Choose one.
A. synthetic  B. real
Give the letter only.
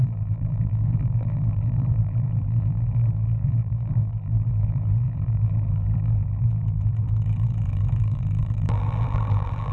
A